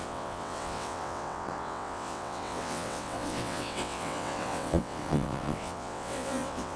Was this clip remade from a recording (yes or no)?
yes